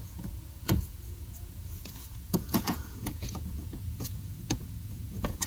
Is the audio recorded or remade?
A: remade